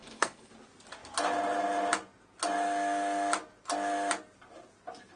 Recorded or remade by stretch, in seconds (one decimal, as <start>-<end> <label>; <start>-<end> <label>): 0.0-0.5 remade; 0.5-5.2 recorded